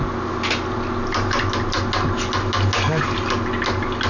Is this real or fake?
real